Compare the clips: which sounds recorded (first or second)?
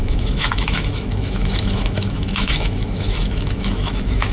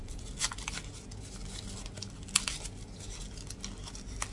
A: second